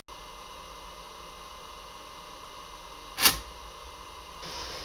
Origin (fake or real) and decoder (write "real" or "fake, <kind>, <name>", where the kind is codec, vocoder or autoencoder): real